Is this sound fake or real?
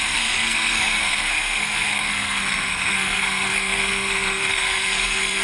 fake